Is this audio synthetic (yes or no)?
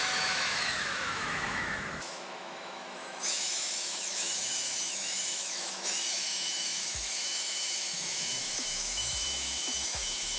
yes